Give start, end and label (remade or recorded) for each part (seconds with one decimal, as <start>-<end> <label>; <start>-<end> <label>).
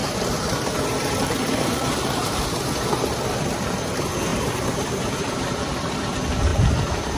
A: 0.0-2.3 remade; 2.3-4.3 recorded; 4.3-5.9 remade; 5.9-7.2 recorded